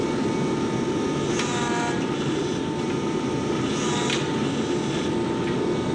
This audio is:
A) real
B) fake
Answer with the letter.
A